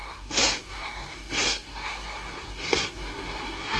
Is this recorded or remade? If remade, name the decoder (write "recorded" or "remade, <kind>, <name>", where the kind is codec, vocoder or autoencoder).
remade, codec, SNAC